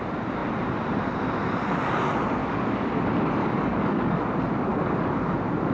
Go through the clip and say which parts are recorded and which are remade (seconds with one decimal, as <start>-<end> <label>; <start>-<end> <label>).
0.0-2.4 recorded; 2.4-2.9 remade; 2.9-3.4 recorded; 3.4-4.3 remade; 4.3-4.7 recorded; 4.7-5.3 remade; 5.3-5.7 recorded